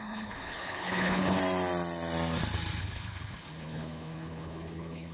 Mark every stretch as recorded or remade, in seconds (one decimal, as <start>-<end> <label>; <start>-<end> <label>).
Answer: 0.0-1.4 remade; 1.4-2.8 recorded; 2.8-5.1 remade